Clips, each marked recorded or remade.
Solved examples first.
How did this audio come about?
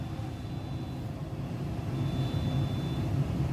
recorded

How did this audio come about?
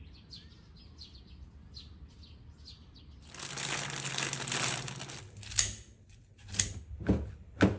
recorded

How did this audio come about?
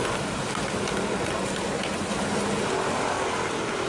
recorded